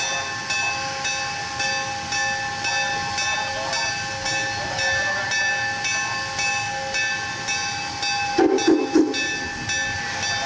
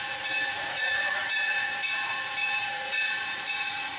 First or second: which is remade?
second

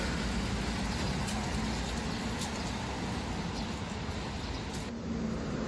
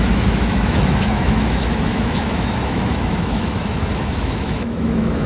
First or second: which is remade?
second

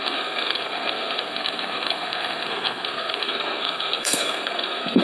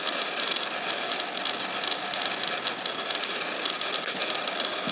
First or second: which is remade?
first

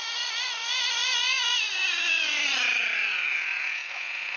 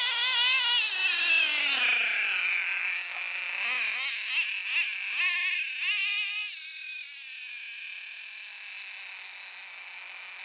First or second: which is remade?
first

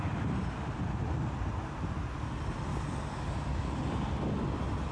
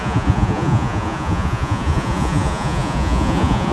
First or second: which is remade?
second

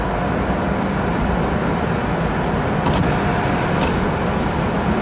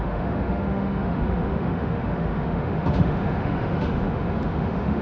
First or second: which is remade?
second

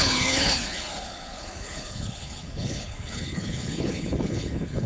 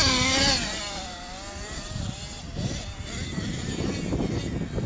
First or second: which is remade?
first